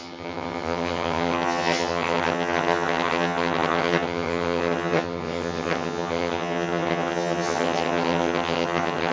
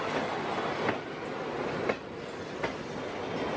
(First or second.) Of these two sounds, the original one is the second